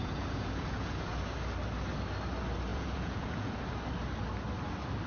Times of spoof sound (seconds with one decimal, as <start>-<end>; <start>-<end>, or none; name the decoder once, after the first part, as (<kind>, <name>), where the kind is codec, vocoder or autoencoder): 0.0-1.1 (vocoder, Vocos); 2.7-3.7